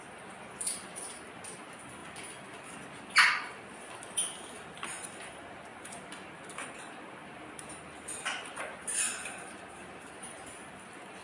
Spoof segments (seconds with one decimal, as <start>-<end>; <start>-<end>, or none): none